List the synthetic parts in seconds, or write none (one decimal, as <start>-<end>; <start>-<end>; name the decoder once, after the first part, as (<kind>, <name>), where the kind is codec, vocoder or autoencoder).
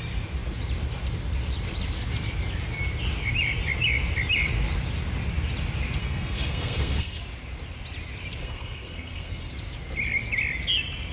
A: 6.0-7.2 (codec, SNAC); 8.4-9.5